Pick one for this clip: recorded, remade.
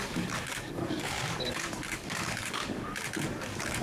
remade